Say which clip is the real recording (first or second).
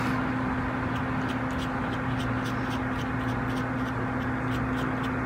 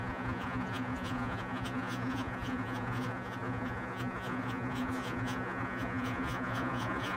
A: first